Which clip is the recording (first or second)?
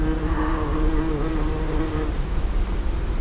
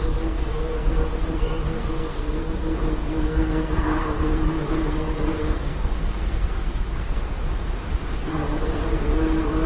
first